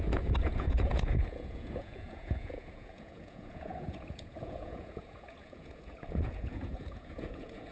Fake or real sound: fake